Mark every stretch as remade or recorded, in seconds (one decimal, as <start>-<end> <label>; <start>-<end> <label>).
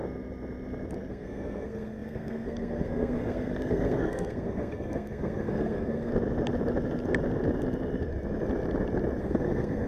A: 0.0-1.1 recorded; 1.1-6.1 remade; 6.1-9.2 recorded; 9.2-9.9 remade